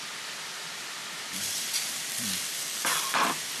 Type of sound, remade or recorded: remade